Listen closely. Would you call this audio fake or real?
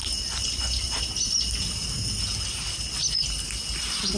real